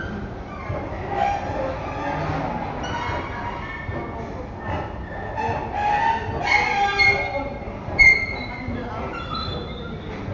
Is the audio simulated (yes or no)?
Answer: no